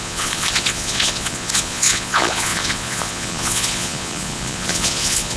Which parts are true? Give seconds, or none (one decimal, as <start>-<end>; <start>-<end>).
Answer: none